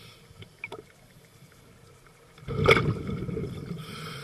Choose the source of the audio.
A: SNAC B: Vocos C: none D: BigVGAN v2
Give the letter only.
C